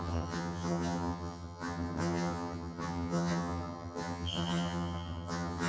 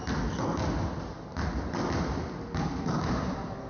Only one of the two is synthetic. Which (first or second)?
first